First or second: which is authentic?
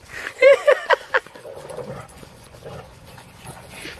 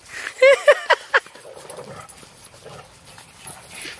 second